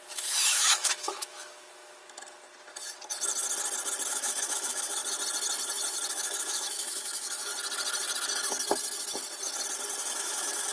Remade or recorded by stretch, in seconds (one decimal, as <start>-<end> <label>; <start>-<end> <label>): 0.0-2.0 remade; 2.0-4.1 recorded; 4.1-5.0 remade; 5.0-6.1 recorded; 6.1-7.5 remade; 7.5-10.0 recorded; 10.0-10.7 remade